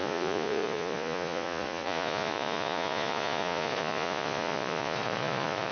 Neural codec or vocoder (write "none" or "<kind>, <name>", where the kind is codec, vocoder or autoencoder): vocoder, Vocos